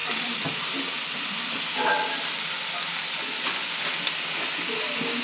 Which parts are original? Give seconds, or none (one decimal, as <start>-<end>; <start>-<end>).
0.0-3.2; 3.9-5.2